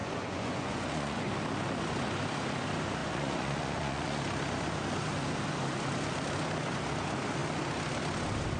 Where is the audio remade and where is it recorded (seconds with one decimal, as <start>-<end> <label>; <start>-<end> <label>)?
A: 0.0-1.3 remade; 1.3-3.0 recorded; 3.0-4.2 remade; 4.2-8.6 recorded